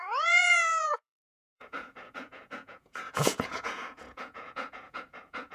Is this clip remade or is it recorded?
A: remade